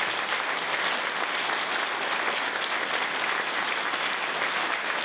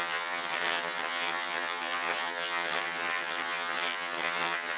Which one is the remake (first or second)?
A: second